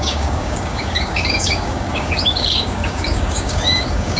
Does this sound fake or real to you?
fake